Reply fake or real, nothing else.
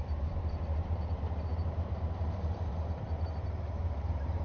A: fake